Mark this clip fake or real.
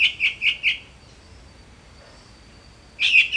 real